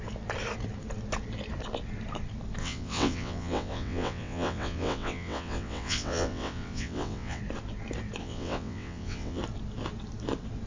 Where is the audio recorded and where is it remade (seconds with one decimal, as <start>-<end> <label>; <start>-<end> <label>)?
0.0-2.6 recorded; 2.6-7.4 remade; 7.4-8.2 recorded; 8.2-9.4 remade; 9.4-10.7 recorded